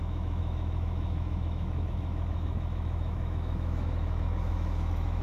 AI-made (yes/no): yes